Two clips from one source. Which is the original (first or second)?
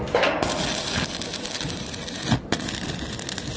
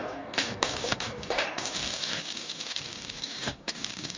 first